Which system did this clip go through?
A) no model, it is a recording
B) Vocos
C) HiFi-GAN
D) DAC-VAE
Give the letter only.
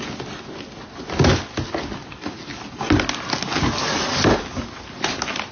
A